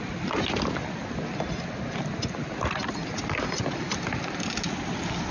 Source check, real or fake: real